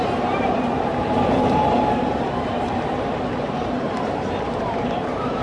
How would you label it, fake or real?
fake